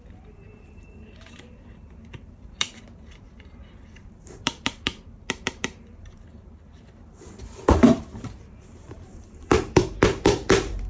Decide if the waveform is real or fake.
fake